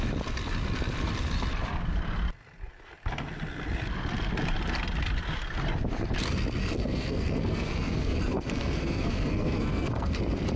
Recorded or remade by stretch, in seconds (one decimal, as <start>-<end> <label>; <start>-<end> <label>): 0.0-6.6 recorded; 6.6-10.2 remade; 10.2-10.6 recorded